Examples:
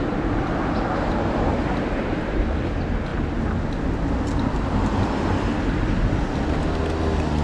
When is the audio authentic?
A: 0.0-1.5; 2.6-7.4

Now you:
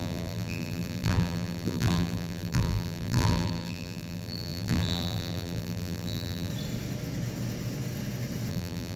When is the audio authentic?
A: 6.5-8.5

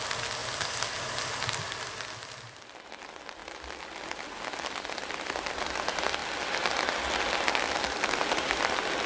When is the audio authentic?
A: 0.0-9.1